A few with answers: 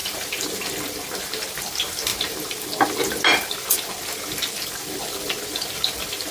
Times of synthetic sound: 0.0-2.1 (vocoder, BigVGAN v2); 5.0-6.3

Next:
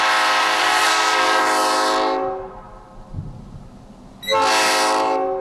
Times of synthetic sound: 0.4-1.4 (codec, SNAC)

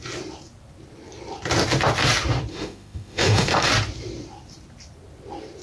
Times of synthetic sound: 2.5-3.7 (autoencoder, DAC-VAE)

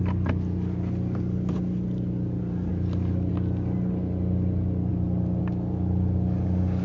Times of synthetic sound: none

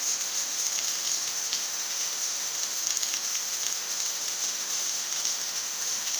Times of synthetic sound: 0.0-6.2 (autoencoder, DAC-VAE)